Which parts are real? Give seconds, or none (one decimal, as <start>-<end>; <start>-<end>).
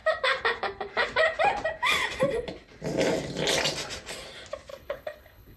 0.0-4.7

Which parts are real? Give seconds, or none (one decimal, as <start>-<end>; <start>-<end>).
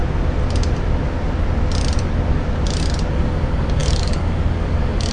0.0-3.1